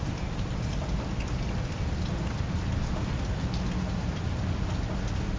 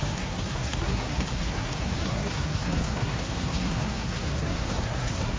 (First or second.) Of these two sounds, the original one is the first